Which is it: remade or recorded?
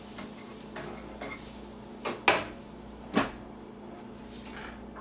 recorded